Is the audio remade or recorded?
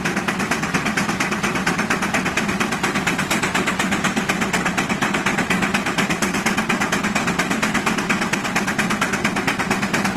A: recorded